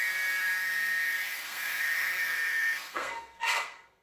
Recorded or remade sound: remade